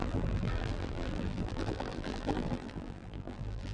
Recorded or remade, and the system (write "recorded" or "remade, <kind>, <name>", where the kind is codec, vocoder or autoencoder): remade, vocoder, BigVGAN v2